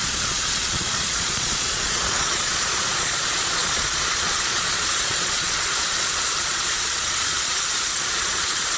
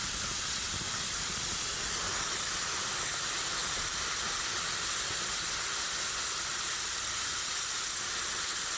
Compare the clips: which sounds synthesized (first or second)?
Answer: first